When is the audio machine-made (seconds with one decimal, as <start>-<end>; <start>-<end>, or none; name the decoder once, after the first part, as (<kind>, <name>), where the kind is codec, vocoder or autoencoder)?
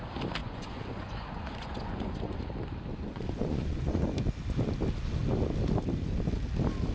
0.4-2.5 (vocoder, Vocos); 2.9-4.0